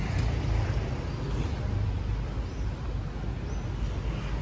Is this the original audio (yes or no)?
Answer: yes